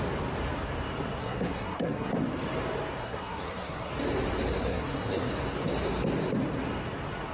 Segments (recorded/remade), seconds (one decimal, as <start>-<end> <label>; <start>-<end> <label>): 0.0-1.2 recorded; 1.2-2.1 remade; 2.1-3.0 recorded; 3.0-3.9 remade; 3.9-4.6 recorded; 4.6-5.3 remade; 5.3-7.3 recorded